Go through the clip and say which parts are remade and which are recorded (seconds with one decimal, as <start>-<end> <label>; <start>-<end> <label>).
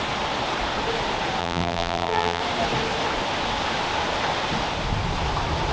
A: 0.0-1.4 recorded; 1.4-2.4 remade; 2.4-5.7 recorded